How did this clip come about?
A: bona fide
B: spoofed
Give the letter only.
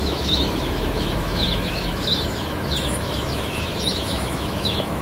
B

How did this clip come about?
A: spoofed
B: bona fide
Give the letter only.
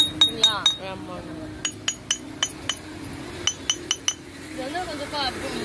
B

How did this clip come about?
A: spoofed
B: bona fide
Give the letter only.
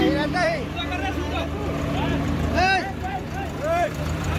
A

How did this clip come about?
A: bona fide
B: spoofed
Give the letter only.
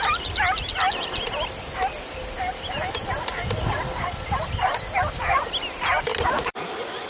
A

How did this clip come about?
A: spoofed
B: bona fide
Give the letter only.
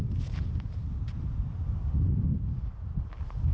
B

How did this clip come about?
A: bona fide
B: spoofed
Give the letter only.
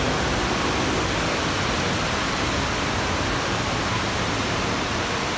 A